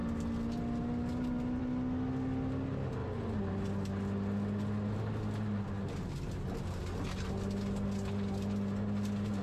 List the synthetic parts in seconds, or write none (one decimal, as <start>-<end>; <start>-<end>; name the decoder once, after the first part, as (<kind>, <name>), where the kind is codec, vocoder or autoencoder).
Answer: none